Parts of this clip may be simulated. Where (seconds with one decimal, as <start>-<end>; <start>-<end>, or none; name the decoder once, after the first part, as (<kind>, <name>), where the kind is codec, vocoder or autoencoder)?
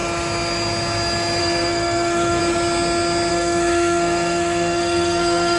1.4-2.4 (codec, SNAC); 3.3-5.6